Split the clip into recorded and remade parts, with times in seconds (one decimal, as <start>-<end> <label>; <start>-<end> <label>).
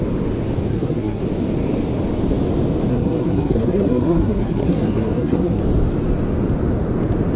0.0-0.7 recorded; 0.7-1.2 remade; 1.2-2.9 recorded; 2.9-5.6 remade; 5.6-7.4 recorded